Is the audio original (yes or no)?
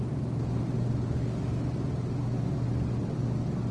yes